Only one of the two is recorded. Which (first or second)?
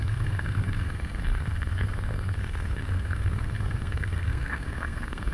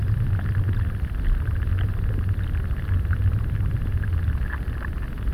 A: second